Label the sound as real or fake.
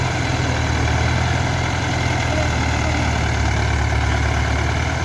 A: real